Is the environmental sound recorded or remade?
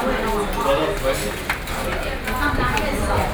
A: recorded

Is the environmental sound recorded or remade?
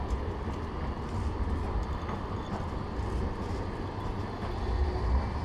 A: recorded